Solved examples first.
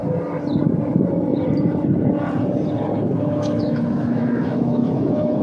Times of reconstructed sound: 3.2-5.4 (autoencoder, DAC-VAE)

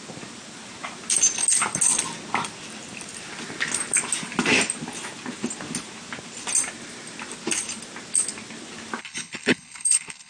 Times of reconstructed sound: 9.0-10.3 (codec, HILCodec)

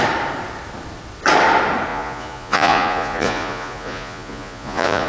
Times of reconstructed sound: 1.9-5.1 (vocoder, Vocos)

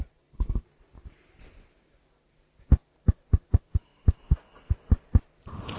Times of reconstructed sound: 0.0-1.0 (vocoder, BigVGAN v2); 3.0-3.9; 4.8-5.8

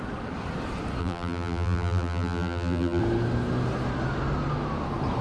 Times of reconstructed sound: 1.0-3.0 (vocoder, BigVGAN v2)

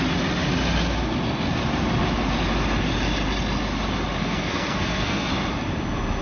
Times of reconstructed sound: 4.2-5.3 (codec, SNAC)

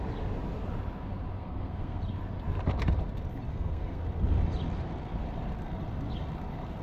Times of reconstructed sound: 1.4-2.0 (codec, SNAC); 3.5-4.0